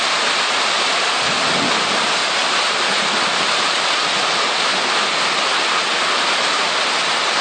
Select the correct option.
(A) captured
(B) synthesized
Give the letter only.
A